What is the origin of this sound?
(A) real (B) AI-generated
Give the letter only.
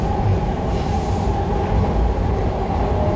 A